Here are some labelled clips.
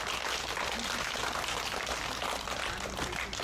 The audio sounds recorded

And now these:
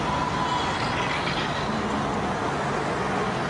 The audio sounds recorded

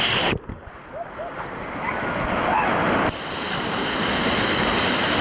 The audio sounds recorded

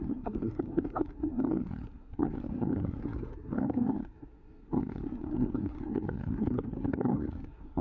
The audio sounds remade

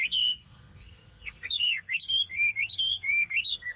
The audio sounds remade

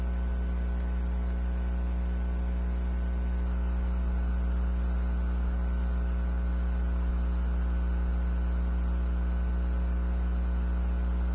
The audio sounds recorded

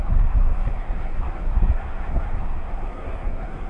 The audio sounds remade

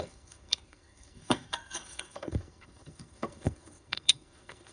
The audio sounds remade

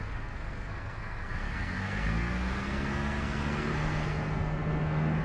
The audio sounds remade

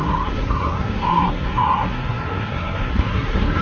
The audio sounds remade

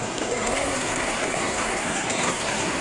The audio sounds remade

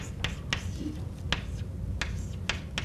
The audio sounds recorded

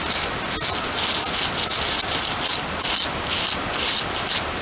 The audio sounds recorded